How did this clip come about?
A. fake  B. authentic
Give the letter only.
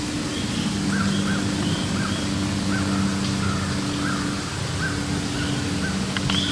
B